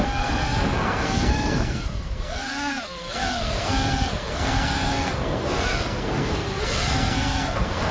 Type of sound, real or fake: fake